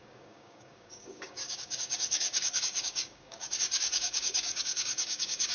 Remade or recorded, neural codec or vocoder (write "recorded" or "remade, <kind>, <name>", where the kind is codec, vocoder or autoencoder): remade, codec, DAC